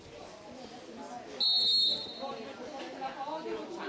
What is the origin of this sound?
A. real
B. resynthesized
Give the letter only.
A